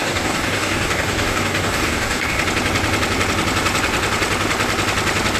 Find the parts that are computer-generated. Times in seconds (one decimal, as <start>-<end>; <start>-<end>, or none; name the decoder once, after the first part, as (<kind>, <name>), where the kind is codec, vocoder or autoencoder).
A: 0.0-2.4 (codec, DAC)